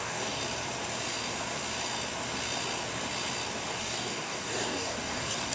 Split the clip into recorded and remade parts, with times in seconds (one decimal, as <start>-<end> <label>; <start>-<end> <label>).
0.0-0.4 remade; 0.4-3.7 recorded; 3.7-5.5 remade